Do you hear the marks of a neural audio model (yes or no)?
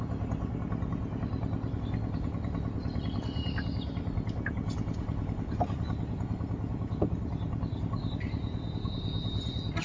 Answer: no